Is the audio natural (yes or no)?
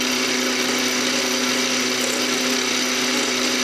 yes